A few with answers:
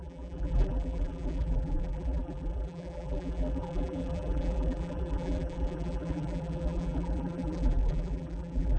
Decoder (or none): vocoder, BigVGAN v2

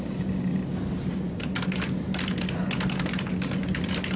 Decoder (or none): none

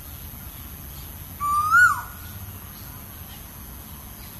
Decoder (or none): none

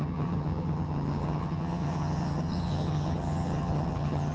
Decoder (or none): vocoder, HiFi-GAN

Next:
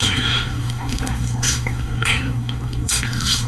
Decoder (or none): codec, SNAC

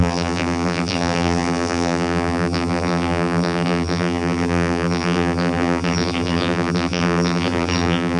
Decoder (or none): vocoder, BigVGAN v2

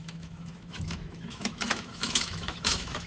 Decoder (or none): autoencoder, DAC-VAE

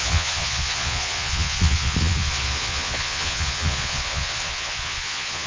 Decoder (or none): vocoder, Vocos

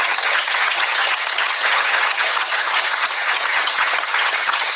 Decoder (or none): vocoder, HiFi-GAN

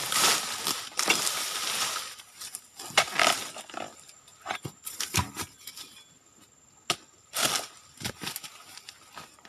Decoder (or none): none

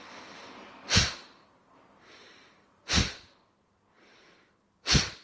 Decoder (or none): none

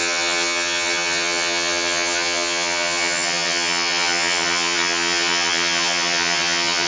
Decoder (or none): vocoder, HiFi-GAN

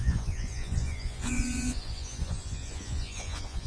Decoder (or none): vocoder, Vocos